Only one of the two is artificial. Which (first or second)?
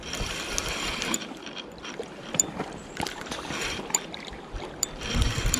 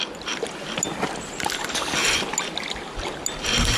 first